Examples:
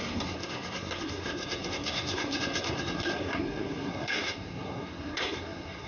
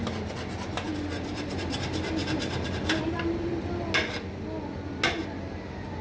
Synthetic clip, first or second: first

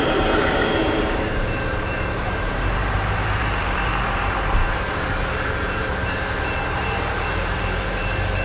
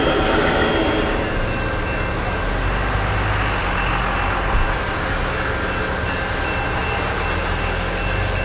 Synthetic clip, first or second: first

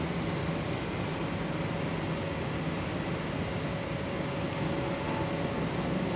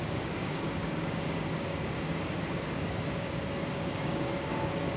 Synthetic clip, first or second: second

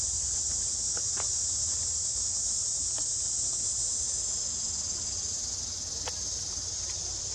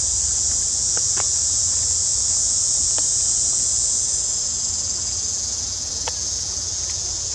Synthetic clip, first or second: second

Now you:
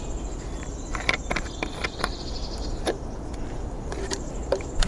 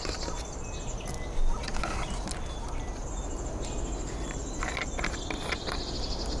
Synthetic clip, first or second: first